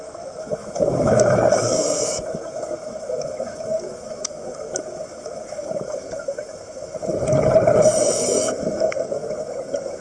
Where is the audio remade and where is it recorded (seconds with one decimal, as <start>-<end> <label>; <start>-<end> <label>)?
0.0-7.1 remade; 7.1-8.0 recorded; 8.0-10.0 remade